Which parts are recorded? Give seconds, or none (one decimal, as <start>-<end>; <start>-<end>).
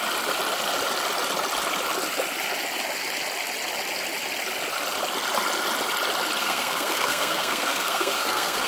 0.0-6.4